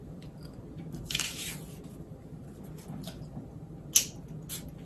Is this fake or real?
real